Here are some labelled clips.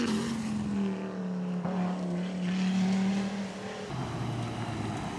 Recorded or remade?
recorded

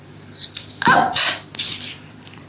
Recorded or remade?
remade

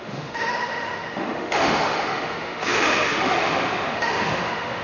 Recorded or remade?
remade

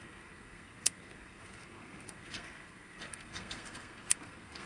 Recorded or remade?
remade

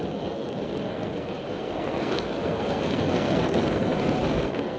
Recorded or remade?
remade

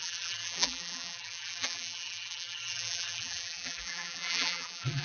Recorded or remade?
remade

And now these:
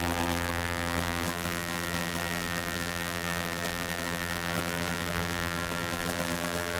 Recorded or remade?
remade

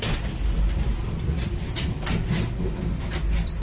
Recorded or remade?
recorded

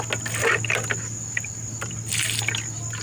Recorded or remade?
recorded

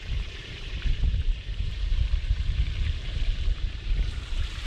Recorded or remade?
remade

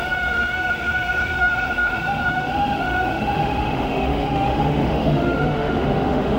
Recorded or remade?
remade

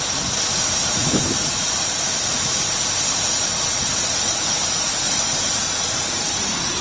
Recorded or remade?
remade